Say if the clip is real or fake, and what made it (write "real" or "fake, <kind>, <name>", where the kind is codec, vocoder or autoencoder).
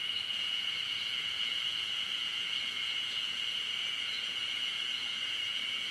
fake, vocoder, Vocos